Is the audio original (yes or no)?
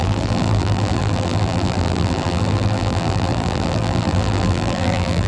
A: no